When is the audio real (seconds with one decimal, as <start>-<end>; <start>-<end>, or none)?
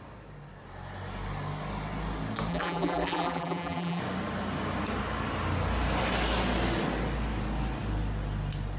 0.0-2.5; 4.0-8.8